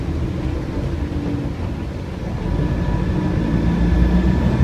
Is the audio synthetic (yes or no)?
no